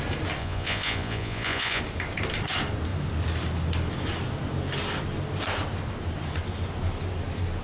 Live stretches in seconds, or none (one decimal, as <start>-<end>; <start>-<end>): 0.0-0.4; 1.8-7.6